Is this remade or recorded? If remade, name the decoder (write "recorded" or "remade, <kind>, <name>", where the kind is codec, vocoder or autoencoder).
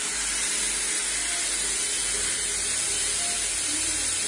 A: recorded